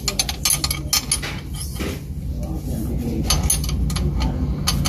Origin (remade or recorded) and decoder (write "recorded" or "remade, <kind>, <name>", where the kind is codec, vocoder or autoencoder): recorded